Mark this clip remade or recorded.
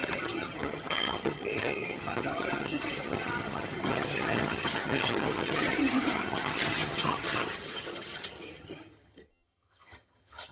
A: remade